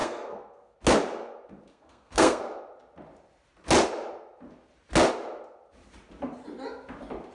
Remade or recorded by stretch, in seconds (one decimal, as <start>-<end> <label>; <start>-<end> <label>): 0.0-0.7 remade; 0.7-1.7 recorded; 1.7-2.4 remade; 2.4-7.3 recorded